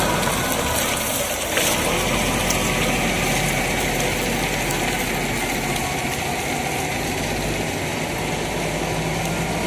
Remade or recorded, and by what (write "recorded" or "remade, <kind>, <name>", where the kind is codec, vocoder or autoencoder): recorded